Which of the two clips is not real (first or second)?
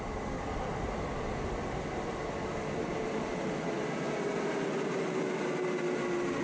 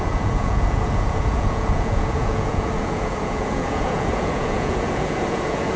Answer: second